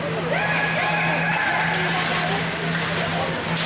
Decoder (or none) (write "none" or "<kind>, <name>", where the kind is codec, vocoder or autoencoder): none